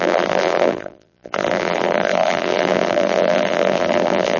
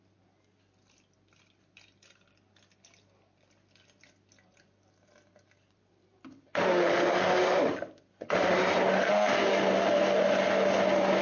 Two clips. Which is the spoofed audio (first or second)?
first